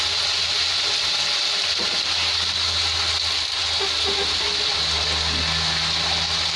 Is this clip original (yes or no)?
yes